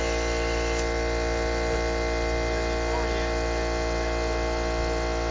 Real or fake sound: real